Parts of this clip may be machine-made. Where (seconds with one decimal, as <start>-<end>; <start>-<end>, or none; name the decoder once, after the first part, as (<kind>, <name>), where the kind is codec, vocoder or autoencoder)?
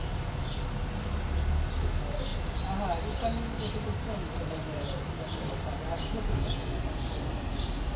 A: none